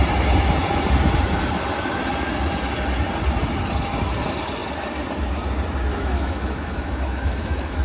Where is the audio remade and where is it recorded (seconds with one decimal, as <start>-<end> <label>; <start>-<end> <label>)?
0.0-5.9 recorded; 5.9-7.8 remade